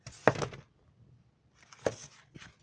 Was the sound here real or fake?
real